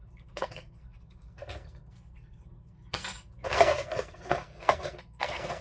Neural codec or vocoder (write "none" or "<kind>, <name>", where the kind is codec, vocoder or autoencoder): codec, SNAC